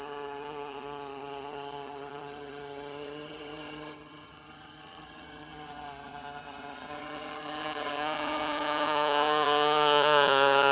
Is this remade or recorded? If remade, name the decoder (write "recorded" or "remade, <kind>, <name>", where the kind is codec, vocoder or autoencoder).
remade, vocoder, HiFi-GAN